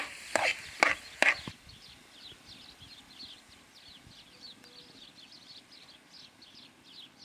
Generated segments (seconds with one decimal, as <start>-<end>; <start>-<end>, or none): none